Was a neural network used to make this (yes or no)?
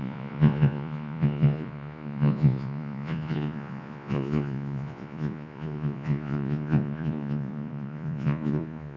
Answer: yes